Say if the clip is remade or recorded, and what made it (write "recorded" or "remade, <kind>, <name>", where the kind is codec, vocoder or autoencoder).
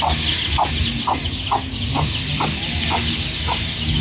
recorded